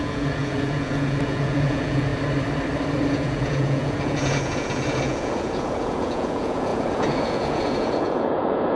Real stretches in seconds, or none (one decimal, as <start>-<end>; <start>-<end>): 2.1-3.1